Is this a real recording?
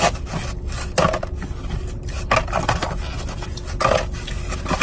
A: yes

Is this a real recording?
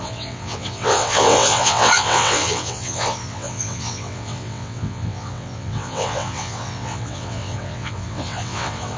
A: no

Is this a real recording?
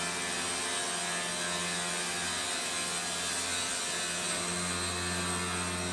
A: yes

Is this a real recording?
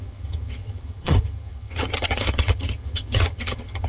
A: no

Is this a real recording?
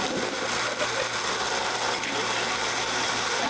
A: yes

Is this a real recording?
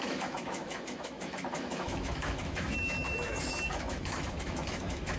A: no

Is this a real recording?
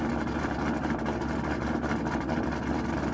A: yes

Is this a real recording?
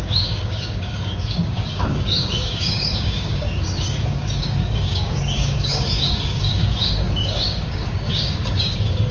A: no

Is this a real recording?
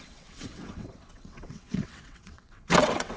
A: no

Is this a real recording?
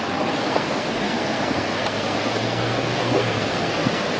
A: no